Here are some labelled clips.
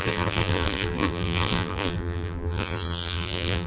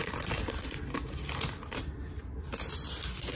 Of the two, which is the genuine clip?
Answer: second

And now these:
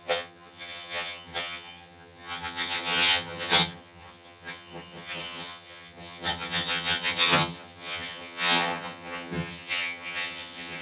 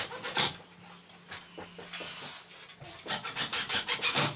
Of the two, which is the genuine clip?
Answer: second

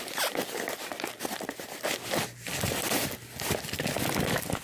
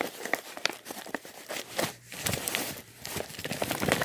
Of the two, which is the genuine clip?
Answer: first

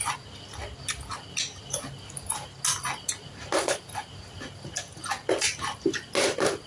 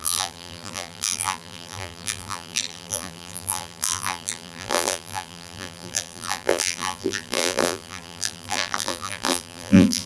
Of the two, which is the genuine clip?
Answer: first